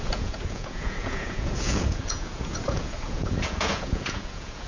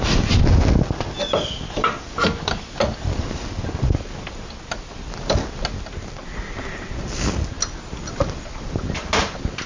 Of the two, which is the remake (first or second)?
first